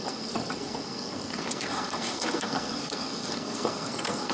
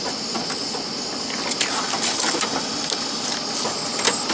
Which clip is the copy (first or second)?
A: first